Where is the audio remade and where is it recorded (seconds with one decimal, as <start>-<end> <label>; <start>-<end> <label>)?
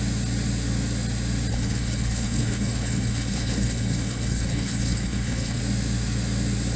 0.0-1.5 recorded; 1.5-5.6 remade; 5.6-6.8 recorded